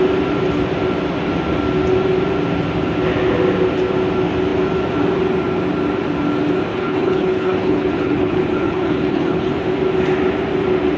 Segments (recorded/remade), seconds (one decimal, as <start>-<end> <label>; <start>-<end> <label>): 0.0-6.7 recorded; 6.7-9.5 remade; 9.5-11.0 recorded